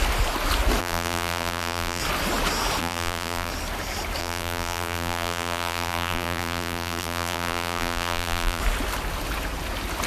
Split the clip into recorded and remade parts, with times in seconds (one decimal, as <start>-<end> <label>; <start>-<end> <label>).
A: 0.0-0.8 recorded; 0.8-2.0 remade; 2.0-2.8 recorded; 2.8-3.5 remade; 3.5-4.2 recorded; 4.2-8.6 remade; 8.6-10.1 recorded